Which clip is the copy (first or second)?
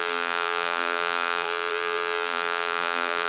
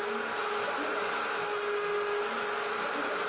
first